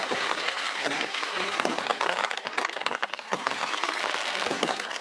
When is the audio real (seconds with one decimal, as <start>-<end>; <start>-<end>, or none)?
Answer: 4.0-4.5